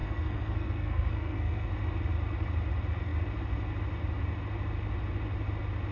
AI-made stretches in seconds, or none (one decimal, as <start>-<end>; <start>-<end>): 0.0-1.7